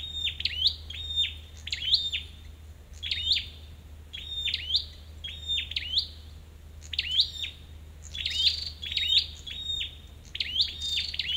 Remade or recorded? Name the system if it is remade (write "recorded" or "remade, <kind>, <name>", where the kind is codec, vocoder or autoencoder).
recorded